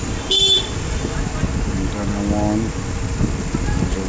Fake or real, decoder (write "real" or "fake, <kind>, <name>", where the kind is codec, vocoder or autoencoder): real